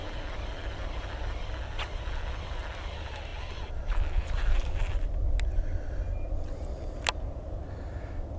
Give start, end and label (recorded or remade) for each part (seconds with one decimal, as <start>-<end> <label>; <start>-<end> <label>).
0.0-8.4 recorded